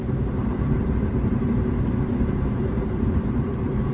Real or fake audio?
fake